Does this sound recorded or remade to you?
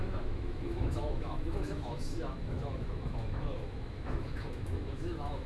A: remade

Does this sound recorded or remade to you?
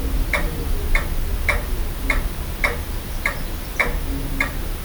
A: recorded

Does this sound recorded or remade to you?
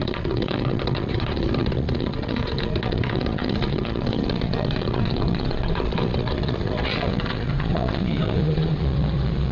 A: remade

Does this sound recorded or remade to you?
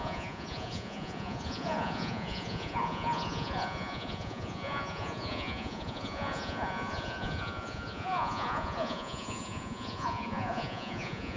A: remade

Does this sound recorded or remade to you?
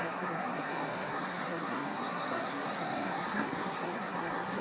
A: remade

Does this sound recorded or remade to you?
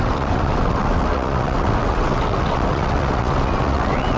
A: remade